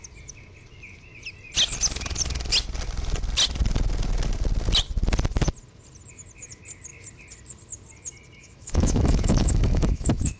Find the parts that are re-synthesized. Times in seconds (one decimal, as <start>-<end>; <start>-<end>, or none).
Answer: 8.4-10.4